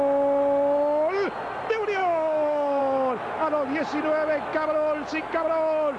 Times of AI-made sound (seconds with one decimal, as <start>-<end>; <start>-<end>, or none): 2.0-2.8